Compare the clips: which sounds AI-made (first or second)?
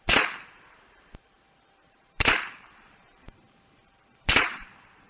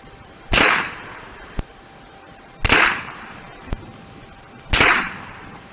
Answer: first